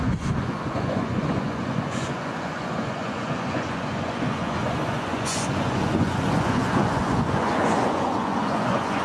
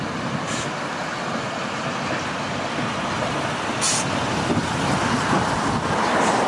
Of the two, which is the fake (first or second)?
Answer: first